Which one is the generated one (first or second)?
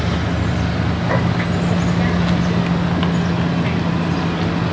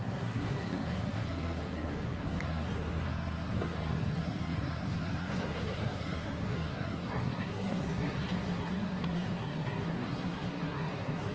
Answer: second